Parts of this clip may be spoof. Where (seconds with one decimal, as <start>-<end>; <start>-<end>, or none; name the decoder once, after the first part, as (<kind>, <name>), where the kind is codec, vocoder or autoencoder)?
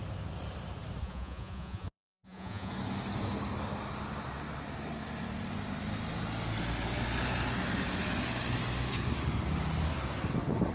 1.0-2.7 (vocoder, Vocos)